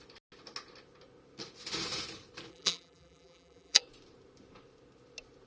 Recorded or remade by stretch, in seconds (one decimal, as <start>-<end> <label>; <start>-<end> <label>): 0.0-2.5 recorded; 2.5-3.8 remade; 3.8-5.5 recorded